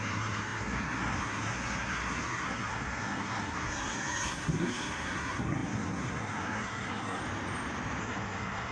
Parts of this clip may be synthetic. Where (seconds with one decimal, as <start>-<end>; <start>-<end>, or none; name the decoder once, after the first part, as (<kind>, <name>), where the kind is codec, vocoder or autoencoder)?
0.0-7.2 (codec, SNAC); 8.0-8.7